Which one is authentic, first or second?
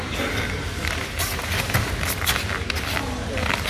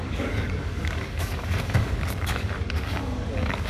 first